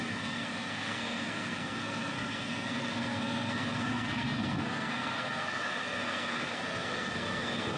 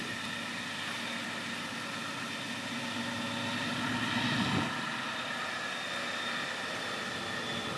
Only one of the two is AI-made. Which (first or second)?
first